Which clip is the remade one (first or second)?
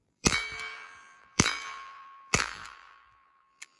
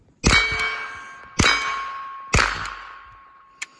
first